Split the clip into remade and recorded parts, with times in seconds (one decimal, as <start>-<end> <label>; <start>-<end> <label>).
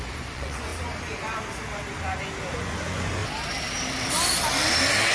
0.0-0.7 remade; 0.7-2.5 recorded; 2.5-3.2 remade; 3.2-5.1 recorded